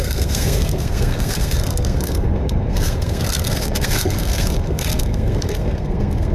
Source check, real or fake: fake